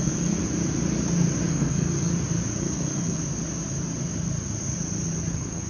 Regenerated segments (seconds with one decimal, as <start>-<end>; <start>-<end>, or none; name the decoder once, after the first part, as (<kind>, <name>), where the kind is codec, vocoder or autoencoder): 0.0-0.4 (codec, SNAC); 1.5-2.1; 2.6-3.2; 5.3-5.7